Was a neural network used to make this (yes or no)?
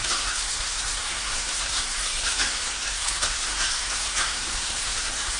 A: yes